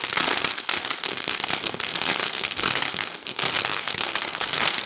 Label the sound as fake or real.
fake